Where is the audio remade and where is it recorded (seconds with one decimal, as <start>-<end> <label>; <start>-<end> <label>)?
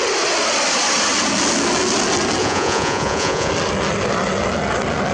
0.0-2.4 recorded; 2.4-3.5 remade; 3.5-5.1 recorded